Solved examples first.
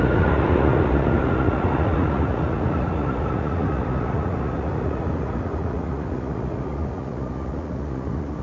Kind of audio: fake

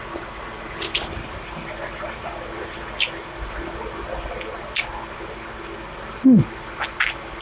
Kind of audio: real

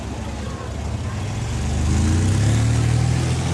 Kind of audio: real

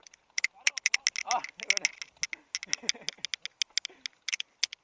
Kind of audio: real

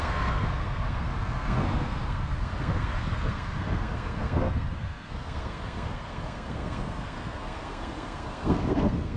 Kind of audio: fake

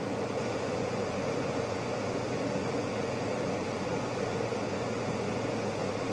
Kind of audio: fake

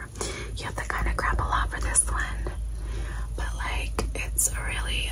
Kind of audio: real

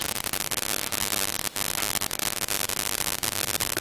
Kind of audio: real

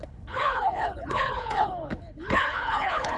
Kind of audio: fake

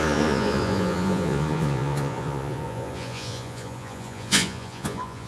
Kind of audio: fake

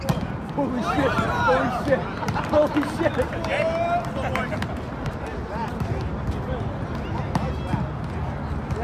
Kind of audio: real